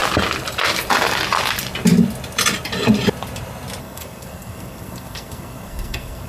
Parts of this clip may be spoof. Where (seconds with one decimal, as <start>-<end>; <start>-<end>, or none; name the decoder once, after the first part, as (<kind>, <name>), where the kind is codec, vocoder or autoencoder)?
3.8-6.3 (codec, SNAC)